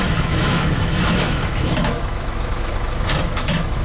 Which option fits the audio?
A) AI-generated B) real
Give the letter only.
A